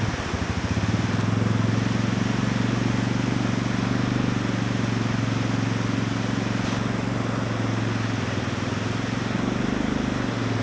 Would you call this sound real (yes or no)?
yes